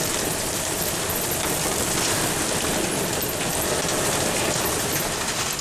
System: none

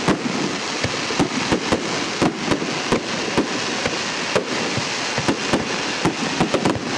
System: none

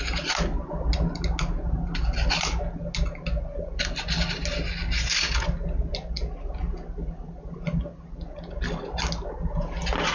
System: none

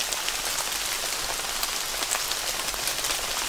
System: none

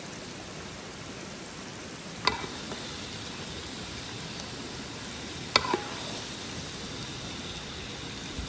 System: none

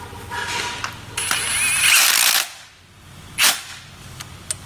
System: none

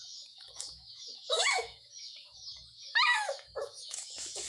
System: autoencoder, DAC-VAE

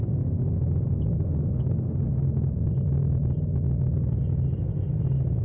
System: none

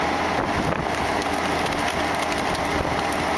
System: none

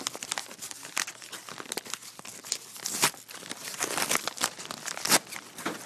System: none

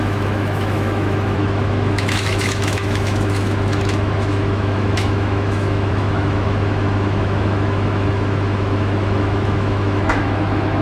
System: autoencoder, DAC-VAE